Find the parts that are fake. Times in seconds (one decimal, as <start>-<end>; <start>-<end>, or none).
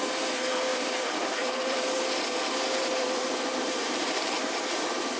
0.7-2.0; 2.8-4.6